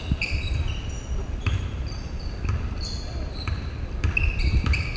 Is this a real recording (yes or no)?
yes